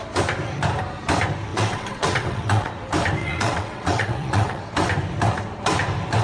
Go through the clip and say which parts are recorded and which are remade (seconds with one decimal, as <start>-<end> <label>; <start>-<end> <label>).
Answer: 0.0-1.5 recorded; 1.5-2.7 remade; 2.7-3.2 recorded; 3.2-4.6 remade; 4.6-6.2 recorded